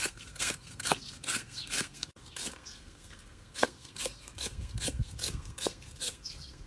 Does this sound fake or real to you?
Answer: fake